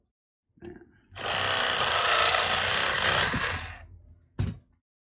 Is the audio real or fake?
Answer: real